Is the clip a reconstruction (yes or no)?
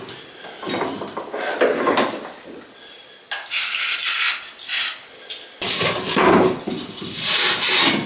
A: no